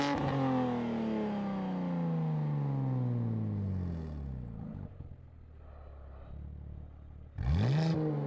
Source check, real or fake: real